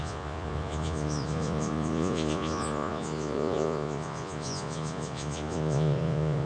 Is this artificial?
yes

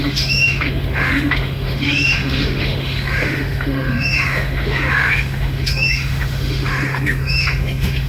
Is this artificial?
yes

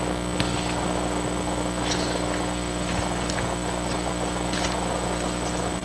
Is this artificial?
no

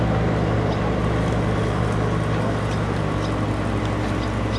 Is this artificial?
no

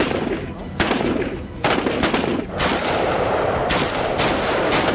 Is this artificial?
no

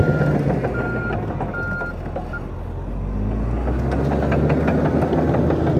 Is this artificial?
no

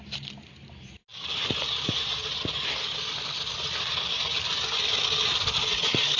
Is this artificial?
no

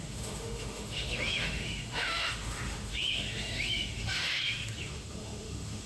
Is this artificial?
yes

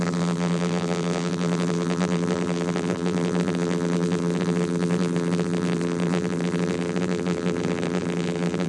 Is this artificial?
yes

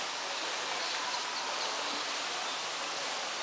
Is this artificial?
no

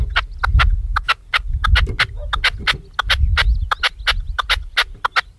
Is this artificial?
no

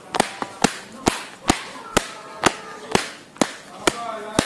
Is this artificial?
no